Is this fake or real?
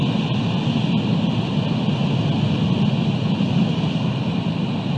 real